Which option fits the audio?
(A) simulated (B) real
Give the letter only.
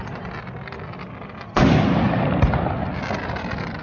B